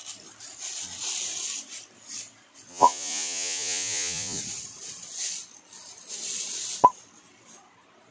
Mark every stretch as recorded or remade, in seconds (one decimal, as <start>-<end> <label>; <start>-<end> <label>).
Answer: 0.0-2.7 recorded; 2.7-4.4 remade; 4.4-8.1 recorded